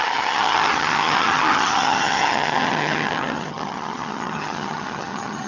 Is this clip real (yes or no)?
no